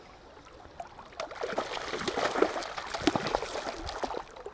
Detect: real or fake real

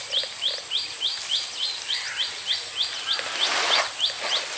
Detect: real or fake real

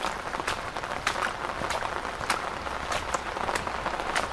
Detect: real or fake real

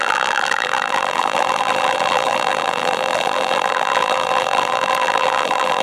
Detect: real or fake fake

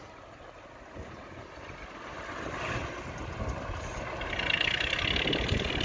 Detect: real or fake real